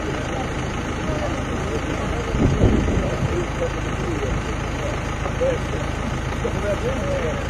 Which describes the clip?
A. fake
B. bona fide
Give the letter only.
B